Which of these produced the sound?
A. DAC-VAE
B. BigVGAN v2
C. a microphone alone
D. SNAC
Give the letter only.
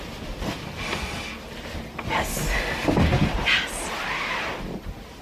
C